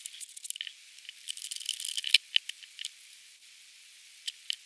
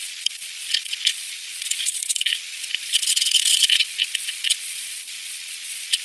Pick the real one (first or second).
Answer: first